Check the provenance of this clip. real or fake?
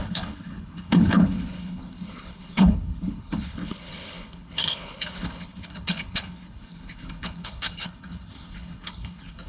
fake